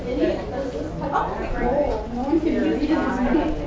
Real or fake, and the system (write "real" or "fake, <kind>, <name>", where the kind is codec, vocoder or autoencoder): real